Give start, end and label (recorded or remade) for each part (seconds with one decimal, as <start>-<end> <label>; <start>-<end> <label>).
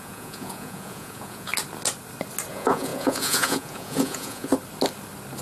0.0-1.5 remade; 1.5-2.5 recorded; 2.5-4.5 remade; 4.5-5.4 recorded